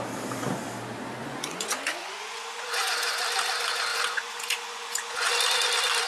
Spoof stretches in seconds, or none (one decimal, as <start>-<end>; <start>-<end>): 1.2-3.2; 3.9-5.3

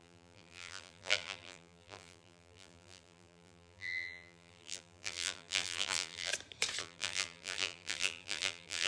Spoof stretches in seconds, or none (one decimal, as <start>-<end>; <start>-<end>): 0.0-6.3; 6.8-8.9

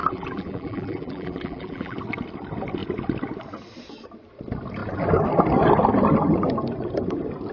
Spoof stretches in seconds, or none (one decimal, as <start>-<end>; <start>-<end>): 0.0-2.0

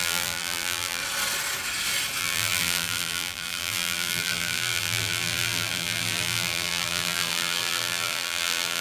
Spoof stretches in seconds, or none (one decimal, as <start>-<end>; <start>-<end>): 0.0-1.0; 2.2-8.8

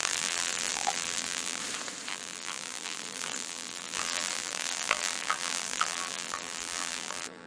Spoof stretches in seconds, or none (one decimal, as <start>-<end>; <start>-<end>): 0.0-1.6; 2.1-7.5

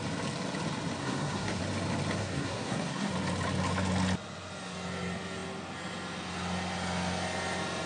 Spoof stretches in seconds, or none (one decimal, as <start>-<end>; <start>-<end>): 1.0-1.6; 2.2-3.1

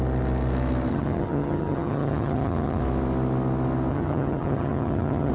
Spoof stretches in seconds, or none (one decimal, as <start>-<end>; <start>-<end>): 0.9-2.8; 3.9-5.3

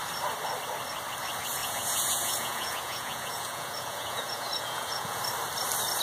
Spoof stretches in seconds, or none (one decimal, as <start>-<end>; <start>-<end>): 1.6-5.2